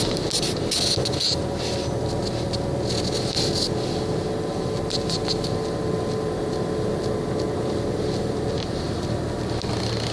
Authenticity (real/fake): real